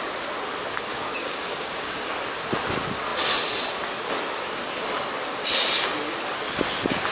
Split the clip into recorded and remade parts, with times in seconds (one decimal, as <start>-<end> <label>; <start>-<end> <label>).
0.0-0.9 recorded; 0.9-2.1 remade; 2.1-7.1 recorded